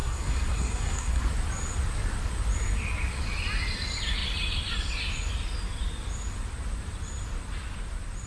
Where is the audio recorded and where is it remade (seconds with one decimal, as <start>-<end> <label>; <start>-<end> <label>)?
0.0-1.2 remade; 1.2-8.3 recorded